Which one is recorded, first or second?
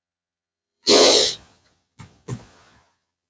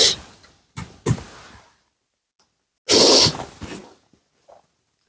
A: second